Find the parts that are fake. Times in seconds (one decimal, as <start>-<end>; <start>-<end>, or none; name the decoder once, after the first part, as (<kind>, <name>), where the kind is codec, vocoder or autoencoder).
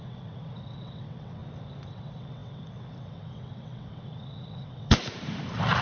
0.0-1.4 (vocoder, WaveNeXt); 1.9-5.0